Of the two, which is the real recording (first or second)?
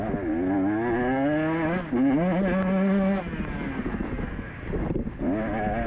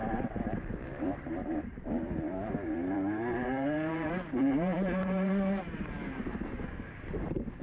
first